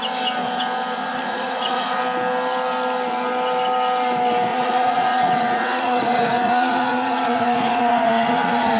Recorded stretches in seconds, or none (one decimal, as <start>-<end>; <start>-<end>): 0.0-1.0; 2.0-4.5